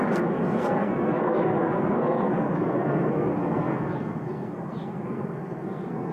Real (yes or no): no